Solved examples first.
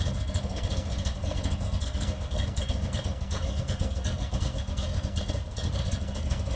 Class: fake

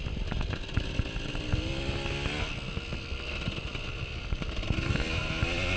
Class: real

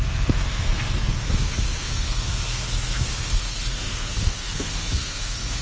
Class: fake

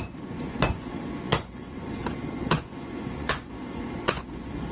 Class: fake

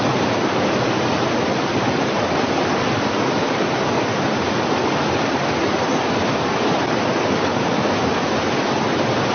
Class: real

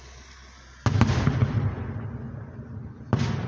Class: real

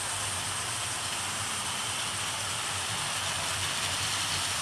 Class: fake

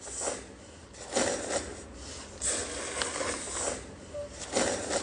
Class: real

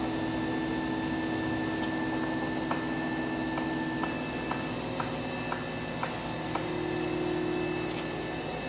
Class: real